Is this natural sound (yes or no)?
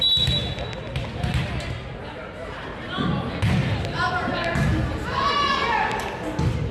yes